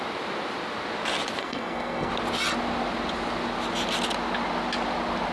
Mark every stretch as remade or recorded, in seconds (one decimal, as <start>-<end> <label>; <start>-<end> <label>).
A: 0.0-1.4 recorded; 1.4-2.1 remade; 2.1-5.3 recorded